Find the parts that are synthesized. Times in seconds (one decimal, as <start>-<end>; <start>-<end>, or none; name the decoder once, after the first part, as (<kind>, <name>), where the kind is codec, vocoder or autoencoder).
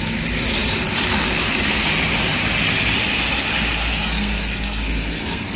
4.0-5.6 (codec, SNAC)